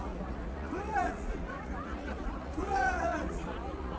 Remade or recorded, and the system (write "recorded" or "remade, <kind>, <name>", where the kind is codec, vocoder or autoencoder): remade, vocoder, Vocos